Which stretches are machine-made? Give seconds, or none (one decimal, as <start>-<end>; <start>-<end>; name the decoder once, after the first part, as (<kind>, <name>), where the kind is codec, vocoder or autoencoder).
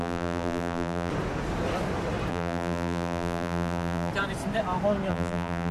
0.0-1.1 (vocoder, BigVGAN v2); 2.3-4.1; 5.1-5.7